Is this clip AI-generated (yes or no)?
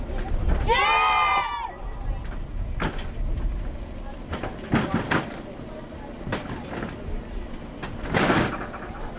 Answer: no